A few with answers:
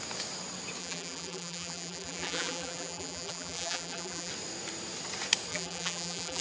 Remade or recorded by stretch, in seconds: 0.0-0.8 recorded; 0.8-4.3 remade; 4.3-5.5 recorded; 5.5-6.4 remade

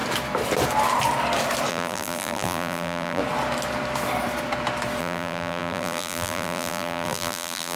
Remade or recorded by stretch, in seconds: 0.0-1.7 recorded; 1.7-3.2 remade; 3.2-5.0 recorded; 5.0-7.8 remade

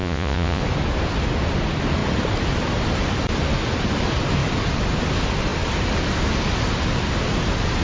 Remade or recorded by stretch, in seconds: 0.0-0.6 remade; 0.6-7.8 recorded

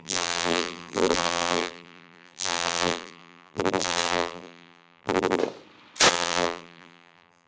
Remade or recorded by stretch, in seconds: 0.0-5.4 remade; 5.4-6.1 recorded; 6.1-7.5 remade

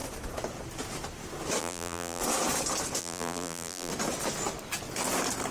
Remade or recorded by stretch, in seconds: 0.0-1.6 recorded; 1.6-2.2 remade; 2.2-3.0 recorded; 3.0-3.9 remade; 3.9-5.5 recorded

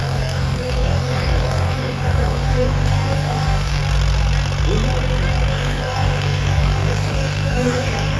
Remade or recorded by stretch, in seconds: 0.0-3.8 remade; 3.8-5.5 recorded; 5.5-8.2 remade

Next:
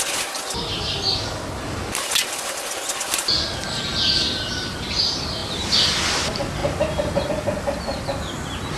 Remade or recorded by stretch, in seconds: 0.0-8.8 recorded